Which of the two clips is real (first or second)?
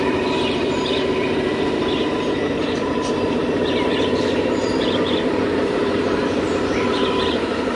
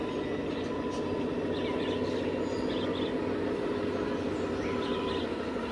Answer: second